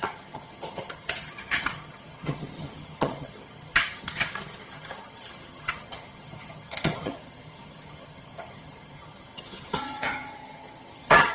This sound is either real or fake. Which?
fake